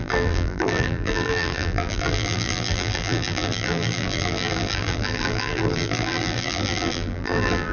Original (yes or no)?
no